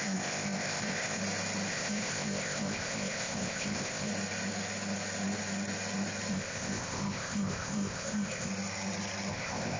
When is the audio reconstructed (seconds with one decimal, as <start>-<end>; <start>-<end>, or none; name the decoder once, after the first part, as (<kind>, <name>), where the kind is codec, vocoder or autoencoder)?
0.0-1.2 (codec, ZipCodec); 1.7-4.1; 6.3-8.5; 9.3-9.8